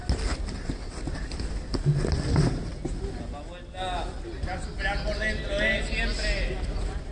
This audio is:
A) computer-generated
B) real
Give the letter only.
B